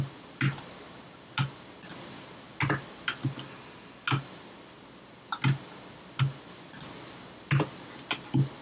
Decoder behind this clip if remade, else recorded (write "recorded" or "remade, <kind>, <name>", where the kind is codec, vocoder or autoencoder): recorded